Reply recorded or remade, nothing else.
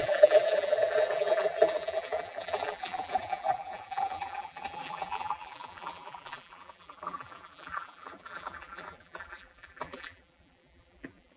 remade